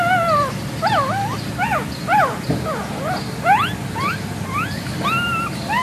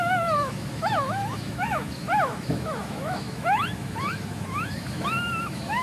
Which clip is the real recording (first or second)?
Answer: first